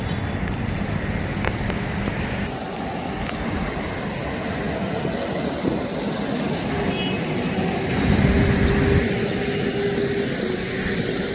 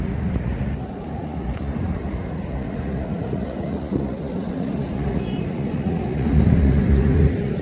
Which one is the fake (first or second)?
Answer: second